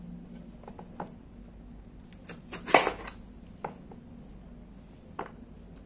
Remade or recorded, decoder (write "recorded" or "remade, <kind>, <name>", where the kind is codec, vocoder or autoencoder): recorded